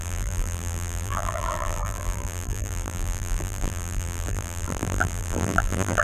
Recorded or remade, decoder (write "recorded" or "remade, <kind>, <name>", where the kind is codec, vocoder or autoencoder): remade, vocoder, BigVGAN v2